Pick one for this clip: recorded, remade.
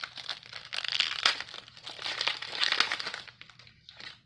recorded